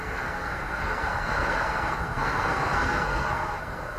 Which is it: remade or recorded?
remade